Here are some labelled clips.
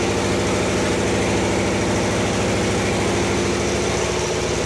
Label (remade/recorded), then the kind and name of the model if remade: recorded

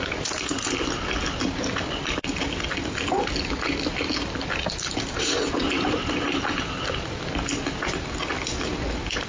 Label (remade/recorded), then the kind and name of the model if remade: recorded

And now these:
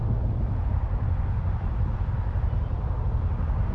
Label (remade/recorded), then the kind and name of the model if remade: recorded